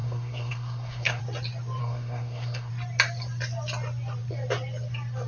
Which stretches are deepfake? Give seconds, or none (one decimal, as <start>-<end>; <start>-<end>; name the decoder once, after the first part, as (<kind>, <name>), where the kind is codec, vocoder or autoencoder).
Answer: 0.0-1.2 (codec, SNAC); 1.8-2.7